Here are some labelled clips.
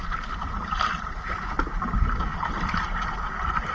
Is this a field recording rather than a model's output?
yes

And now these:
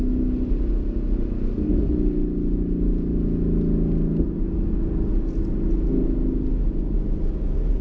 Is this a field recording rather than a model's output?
yes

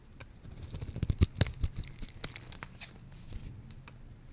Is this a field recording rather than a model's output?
yes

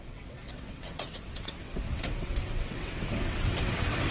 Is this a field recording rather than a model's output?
no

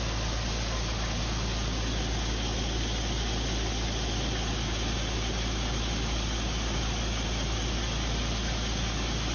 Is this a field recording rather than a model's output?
yes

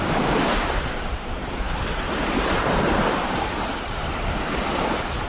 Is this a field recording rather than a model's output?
no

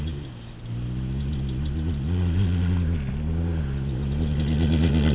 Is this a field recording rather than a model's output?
yes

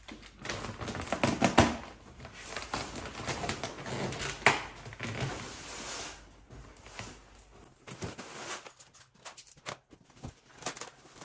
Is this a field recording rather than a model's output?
yes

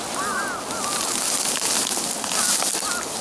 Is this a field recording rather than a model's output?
yes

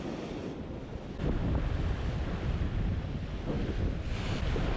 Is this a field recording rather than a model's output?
yes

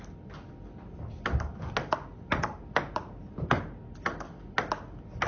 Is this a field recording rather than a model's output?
yes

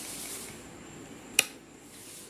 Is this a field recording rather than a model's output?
no